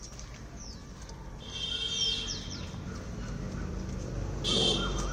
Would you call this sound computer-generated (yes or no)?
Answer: no